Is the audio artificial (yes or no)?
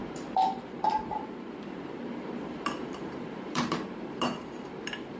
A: yes